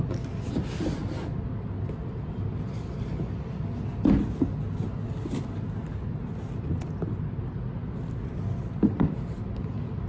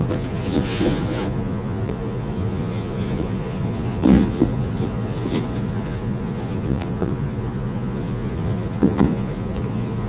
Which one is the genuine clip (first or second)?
first